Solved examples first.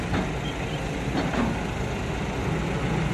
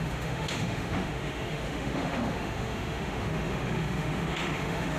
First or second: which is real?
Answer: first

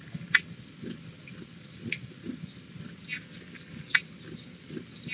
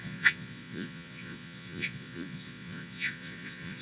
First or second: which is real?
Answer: first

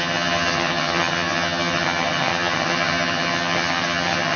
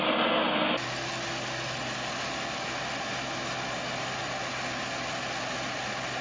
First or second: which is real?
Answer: second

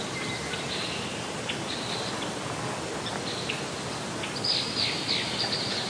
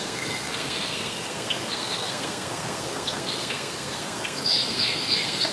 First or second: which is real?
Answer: first